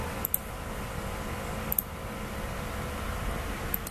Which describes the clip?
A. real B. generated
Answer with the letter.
A